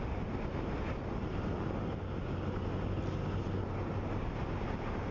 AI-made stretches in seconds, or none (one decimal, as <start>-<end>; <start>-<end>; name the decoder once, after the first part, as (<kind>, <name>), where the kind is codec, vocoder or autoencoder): none